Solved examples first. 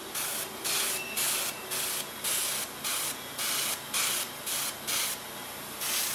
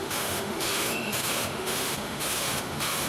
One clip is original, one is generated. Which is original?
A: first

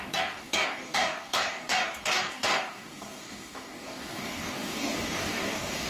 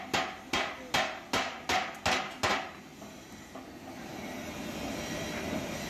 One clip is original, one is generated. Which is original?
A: second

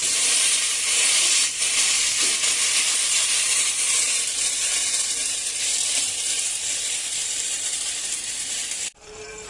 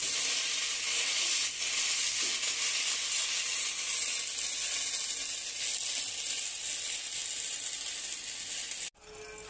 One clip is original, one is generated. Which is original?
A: second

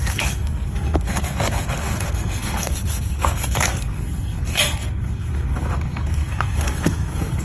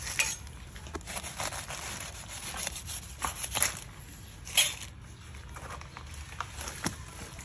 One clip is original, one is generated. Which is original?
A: second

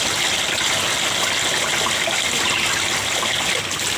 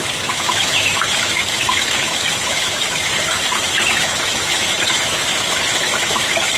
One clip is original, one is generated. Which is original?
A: first